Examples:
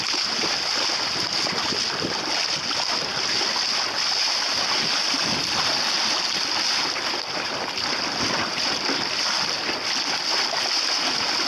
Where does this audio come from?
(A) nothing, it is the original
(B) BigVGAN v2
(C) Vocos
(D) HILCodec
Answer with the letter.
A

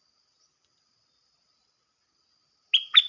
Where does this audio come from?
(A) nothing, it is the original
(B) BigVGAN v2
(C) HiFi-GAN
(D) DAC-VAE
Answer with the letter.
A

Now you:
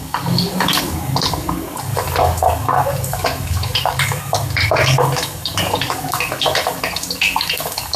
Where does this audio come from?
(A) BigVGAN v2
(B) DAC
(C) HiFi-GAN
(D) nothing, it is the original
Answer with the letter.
B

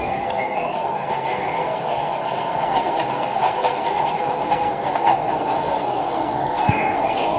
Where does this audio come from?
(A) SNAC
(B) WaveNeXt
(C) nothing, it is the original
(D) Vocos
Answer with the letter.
A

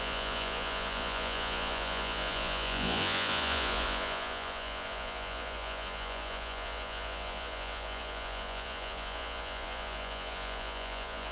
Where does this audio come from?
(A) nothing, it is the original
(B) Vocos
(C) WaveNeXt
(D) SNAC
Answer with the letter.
B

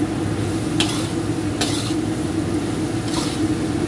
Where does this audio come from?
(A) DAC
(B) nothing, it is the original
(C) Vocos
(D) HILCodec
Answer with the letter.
B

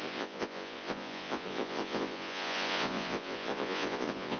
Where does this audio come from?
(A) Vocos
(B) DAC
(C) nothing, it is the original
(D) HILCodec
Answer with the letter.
A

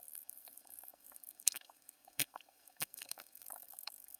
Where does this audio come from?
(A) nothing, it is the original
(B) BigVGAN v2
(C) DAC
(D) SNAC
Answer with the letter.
D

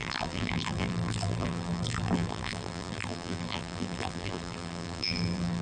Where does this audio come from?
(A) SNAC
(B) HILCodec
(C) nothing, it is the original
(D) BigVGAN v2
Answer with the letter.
D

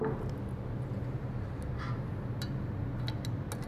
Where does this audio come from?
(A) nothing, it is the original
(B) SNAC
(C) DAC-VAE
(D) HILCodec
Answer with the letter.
A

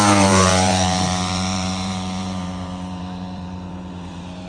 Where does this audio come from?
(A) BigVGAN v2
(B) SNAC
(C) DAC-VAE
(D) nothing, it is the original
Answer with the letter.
A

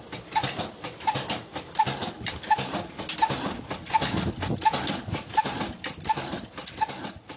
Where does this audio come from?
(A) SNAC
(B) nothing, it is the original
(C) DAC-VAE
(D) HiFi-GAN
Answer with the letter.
B